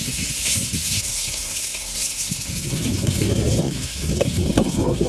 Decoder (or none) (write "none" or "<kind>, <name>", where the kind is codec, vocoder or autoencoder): codec, SNAC